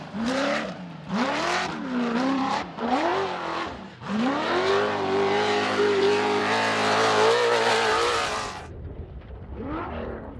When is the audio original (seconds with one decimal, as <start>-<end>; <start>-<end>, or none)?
6.4-7.7